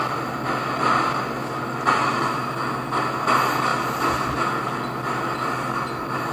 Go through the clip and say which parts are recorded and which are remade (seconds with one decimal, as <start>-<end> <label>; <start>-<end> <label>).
0.0-6.3 recorded